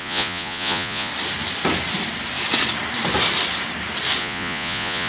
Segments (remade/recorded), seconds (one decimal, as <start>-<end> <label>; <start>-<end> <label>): 0.0-1.1 remade; 1.1-4.2 recorded; 4.2-5.1 remade